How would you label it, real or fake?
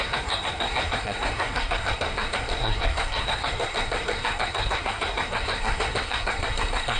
fake